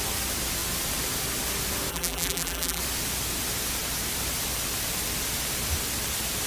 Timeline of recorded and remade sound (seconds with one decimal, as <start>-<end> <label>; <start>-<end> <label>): 0.0-1.9 recorded; 1.9-2.8 remade; 2.8-6.5 recorded